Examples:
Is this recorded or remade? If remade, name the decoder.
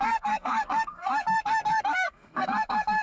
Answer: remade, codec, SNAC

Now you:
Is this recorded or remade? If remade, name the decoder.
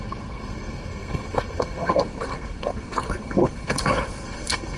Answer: remade, codec, SNAC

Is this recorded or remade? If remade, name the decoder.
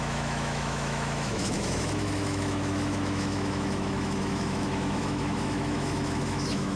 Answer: remade, autoencoder, DAC-VAE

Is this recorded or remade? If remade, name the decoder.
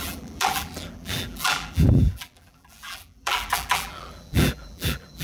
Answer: remade, vocoder, BigVGAN v2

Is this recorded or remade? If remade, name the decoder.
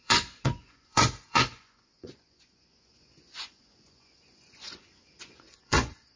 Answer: remade, vocoder, Vocos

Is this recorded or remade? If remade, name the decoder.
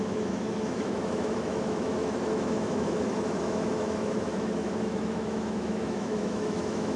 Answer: remade, autoencoder, DAC-VAE